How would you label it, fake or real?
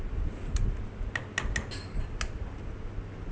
real